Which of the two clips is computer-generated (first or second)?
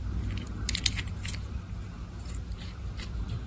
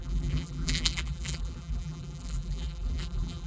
second